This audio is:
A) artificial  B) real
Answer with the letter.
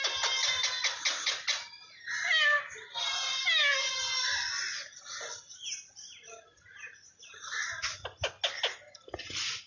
B